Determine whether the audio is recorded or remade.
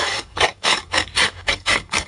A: remade